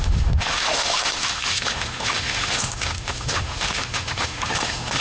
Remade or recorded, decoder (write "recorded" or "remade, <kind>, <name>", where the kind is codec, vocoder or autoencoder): remade, autoencoder, DAC-VAE